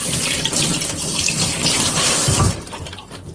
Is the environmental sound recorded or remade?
recorded